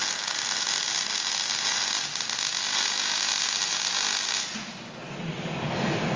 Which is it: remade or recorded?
recorded